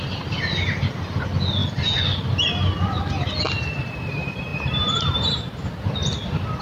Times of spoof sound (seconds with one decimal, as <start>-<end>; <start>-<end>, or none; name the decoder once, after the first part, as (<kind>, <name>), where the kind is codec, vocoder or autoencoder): none